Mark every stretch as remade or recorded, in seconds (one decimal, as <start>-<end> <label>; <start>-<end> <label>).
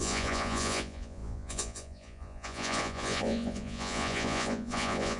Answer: 0.0-5.2 remade